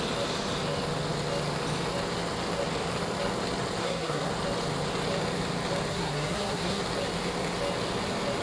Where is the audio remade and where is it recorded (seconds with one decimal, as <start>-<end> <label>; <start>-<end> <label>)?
0.0-3.8 recorded; 3.8-4.3 remade; 4.3-5.9 recorded; 5.9-6.8 remade; 6.8-8.4 recorded